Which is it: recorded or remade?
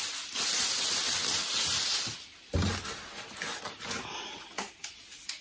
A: recorded